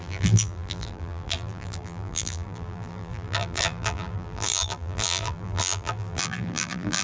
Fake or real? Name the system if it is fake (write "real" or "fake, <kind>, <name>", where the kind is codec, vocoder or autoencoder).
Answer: fake, vocoder, BigVGAN v2